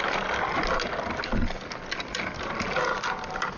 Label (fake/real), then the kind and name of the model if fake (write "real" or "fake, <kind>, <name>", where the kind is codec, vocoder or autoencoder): real